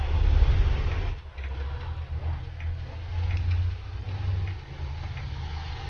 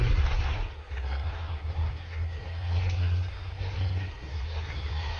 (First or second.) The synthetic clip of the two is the second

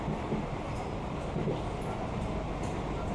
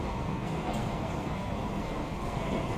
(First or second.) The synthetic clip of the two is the second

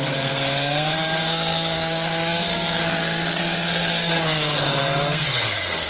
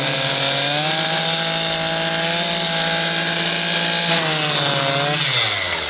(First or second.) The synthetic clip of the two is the first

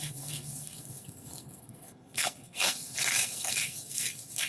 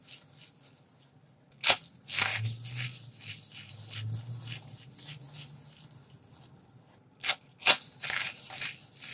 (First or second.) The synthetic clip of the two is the first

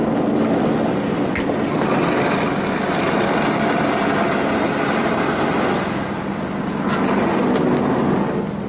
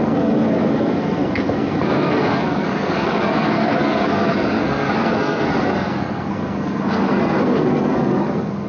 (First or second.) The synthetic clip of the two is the second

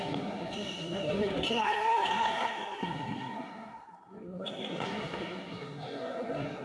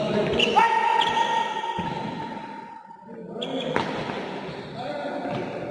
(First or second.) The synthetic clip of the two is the first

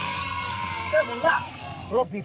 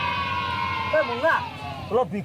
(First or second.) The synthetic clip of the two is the first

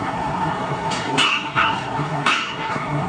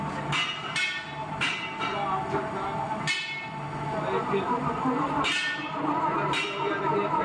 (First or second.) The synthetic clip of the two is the first